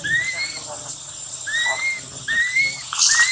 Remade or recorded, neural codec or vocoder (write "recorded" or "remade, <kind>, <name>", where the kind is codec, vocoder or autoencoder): recorded